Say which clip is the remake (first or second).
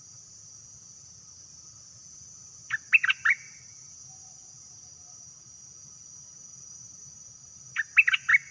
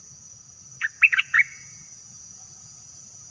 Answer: second